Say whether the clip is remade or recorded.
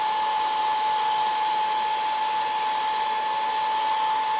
recorded